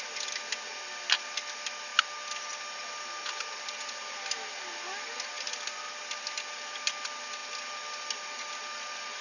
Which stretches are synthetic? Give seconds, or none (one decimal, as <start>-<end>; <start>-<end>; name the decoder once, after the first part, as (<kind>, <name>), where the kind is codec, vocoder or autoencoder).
none